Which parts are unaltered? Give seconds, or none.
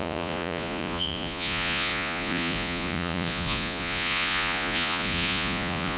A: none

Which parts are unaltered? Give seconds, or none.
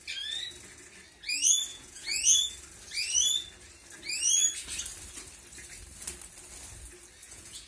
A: 0.0-1.7; 2.5-7.2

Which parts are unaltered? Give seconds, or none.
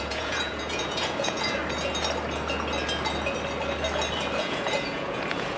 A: 1.6-4.4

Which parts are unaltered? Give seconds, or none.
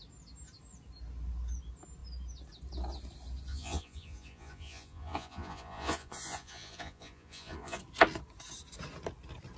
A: 0.0-3.5; 7.8-9.6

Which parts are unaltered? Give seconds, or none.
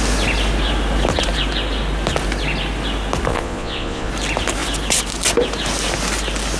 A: 0.0-3.3; 4.1-6.6